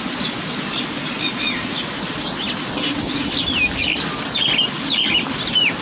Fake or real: real